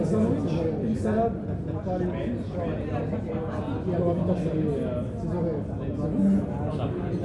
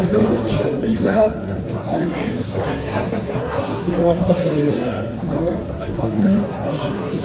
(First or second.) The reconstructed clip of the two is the second